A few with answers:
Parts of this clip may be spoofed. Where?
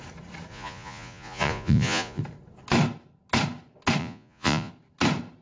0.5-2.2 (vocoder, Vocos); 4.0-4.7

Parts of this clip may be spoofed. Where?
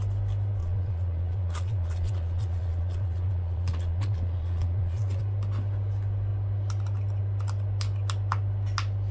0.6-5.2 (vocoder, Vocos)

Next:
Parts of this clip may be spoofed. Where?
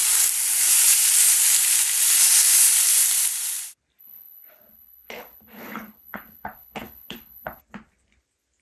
4.0-7.6 (codec, HILCodec)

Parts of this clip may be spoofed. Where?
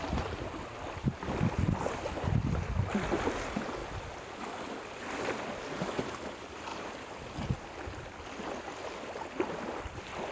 none